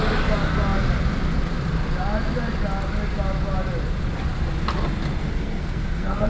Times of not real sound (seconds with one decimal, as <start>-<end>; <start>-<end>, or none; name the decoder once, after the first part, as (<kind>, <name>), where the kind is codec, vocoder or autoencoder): 5.2-6.3 (codec, SNAC)